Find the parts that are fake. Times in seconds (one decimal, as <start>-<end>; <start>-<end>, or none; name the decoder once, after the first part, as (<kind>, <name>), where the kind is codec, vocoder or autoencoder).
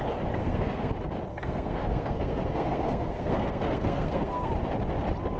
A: 0.4-0.9 (codec, SNAC); 1.3-4.5